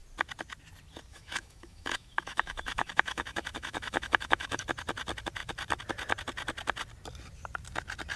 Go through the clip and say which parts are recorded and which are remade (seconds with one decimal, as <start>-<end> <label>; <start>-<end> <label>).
0.0-1.1 recorded; 1.1-4.6 remade; 4.6-8.2 recorded